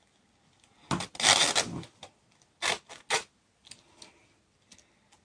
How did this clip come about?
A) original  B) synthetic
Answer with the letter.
A